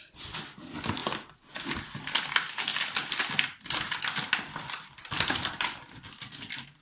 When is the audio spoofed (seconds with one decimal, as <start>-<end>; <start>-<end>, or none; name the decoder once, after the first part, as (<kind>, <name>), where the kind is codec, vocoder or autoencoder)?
none